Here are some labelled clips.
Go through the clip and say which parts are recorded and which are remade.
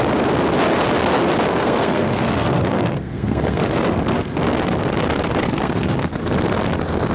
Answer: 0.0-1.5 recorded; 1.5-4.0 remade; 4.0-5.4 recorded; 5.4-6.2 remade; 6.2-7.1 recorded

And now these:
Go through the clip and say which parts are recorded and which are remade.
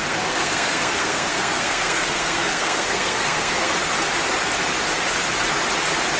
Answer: 0.0-3.7 remade; 3.7-6.2 recorded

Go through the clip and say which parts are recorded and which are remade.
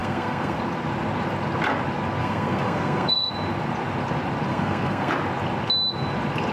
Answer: 0.0-0.6 remade; 0.6-2.2 recorded; 2.2-3.3 remade; 3.3-4.5 recorded; 4.5-5.1 remade; 5.1-6.5 recorded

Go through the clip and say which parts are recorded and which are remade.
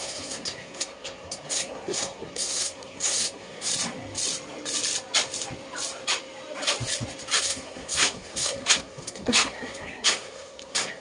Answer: 0.0-3.7 remade; 3.7-7.4 recorded; 7.4-11.0 remade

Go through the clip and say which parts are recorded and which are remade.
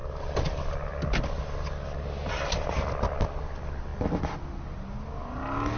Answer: 0.0-5.8 recorded